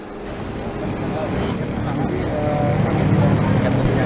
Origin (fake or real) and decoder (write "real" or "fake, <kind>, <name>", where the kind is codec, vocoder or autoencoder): real